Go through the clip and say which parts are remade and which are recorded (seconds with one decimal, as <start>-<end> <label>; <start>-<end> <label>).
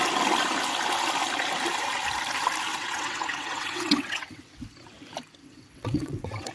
0.0-2.7 recorded; 2.7-4.6 remade; 4.6-5.4 recorded; 5.4-6.5 remade